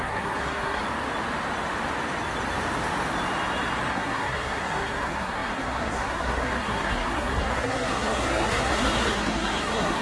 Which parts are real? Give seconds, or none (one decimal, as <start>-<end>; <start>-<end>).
0.8-3.9